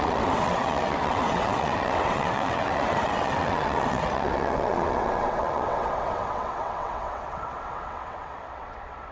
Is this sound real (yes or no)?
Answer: no